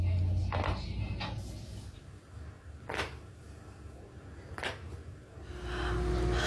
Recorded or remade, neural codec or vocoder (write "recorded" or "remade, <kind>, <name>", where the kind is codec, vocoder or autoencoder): recorded